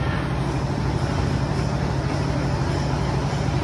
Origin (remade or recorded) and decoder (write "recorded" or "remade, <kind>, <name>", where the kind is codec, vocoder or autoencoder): recorded